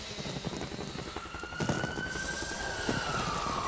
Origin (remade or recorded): recorded